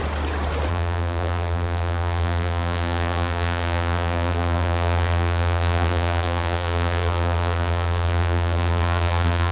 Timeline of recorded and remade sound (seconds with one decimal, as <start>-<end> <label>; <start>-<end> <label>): 0.0-0.7 recorded; 0.7-9.5 remade